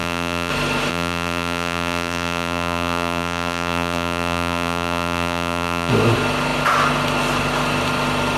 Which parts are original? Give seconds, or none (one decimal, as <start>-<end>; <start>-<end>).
0.5-0.9; 5.9-8.4